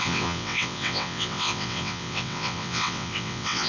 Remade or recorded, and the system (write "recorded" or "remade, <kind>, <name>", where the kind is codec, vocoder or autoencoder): remade, vocoder, WaveNeXt